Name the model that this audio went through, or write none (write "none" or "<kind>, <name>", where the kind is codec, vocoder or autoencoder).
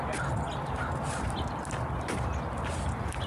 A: none